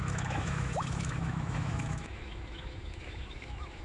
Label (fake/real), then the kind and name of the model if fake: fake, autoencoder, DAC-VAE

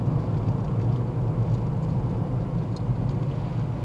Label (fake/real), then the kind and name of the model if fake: real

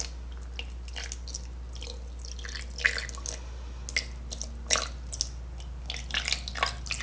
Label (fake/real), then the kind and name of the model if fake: real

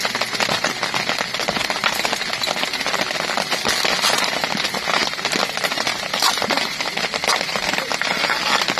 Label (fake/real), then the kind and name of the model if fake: real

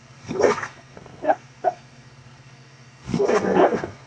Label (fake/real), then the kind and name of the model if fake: fake, codec, SNAC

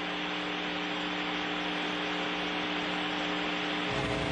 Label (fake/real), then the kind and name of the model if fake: real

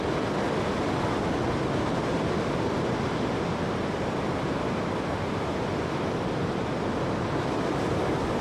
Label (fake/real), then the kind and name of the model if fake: real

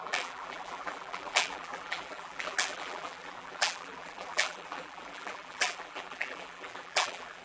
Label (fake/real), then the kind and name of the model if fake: fake, vocoder, BigVGAN v2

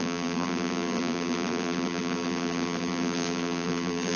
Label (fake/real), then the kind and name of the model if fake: fake, vocoder, BigVGAN v2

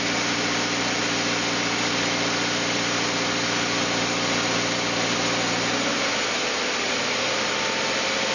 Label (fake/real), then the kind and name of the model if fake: real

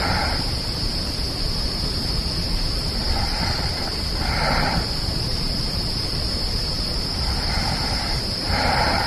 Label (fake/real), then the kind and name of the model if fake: fake, vocoder, BigVGAN v2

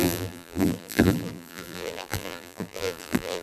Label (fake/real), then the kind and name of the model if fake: fake, vocoder, BigVGAN v2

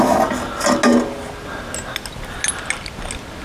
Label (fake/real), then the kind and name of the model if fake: real